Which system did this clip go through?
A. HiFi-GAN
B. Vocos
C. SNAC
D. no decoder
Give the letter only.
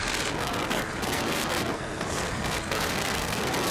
C